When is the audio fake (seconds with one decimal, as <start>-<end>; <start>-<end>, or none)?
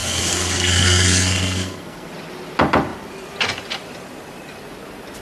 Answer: 0.0-2.1